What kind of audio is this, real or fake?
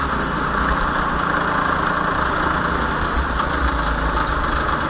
real